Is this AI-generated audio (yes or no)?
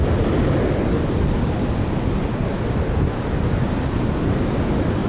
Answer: no